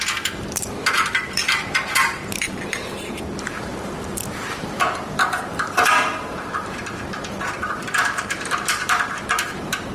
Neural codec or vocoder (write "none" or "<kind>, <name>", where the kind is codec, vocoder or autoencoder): vocoder, BigVGAN v2